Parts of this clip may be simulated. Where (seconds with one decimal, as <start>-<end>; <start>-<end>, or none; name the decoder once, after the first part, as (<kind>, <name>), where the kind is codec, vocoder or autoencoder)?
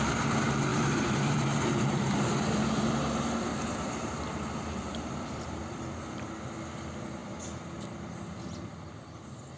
0.7-2.4 (vocoder, BigVGAN v2); 3.5-6.2